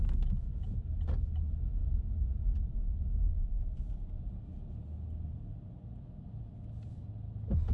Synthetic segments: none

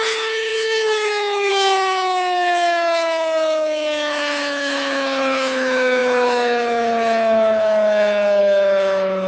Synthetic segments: 0.0-9.3 (codec, HILCodec)

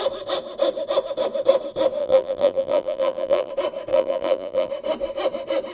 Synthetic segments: 2.0-3.5 (vocoder, BigVGAN v2); 3.9-4.7

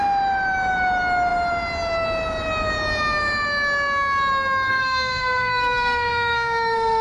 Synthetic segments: 4.7-7.0 (codec, SNAC)

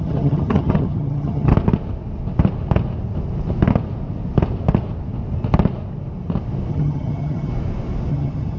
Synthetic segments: 0.0-1.5 (vocoder, HiFi-GAN); 6.7-7.5; 8.1-8.6

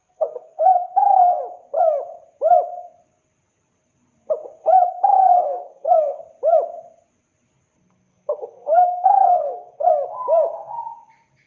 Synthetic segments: 0.0-1.4 (codec, SNAC); 5.2-6.2; 8.1-9.9

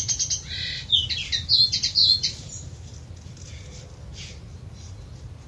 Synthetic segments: none